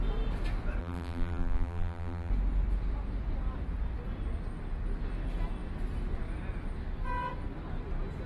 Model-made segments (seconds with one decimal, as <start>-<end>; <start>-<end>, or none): 0.8-2.3